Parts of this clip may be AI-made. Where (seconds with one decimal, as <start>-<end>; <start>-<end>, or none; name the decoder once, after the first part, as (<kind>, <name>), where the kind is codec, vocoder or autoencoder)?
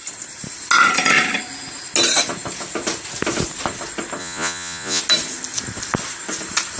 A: 4.2-5.0 (vocoder, Vocos)